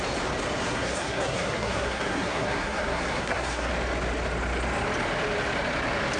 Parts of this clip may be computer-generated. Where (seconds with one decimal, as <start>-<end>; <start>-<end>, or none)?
0.6-3.7

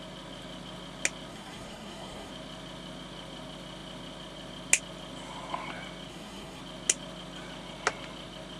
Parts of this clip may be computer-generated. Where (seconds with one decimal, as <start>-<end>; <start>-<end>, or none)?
1.3-2.3; 6.1-6.6

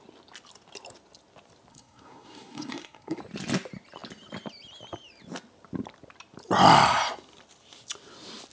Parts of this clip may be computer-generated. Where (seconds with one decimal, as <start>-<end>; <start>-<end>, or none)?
1.7-3.2

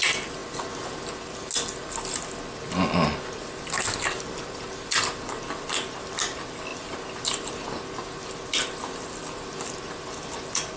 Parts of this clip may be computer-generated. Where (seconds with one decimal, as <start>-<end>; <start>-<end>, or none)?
none

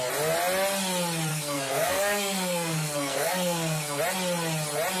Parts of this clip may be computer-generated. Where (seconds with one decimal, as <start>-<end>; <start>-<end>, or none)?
1.3-4.0

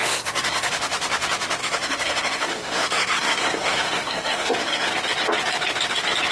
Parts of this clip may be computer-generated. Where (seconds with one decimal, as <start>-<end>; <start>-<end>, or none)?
0.0-0.7; 1.6-4.9

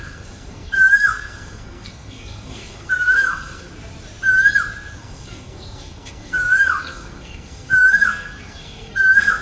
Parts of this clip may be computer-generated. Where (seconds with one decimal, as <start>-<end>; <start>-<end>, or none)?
0.0-3.7; 5.0-9.4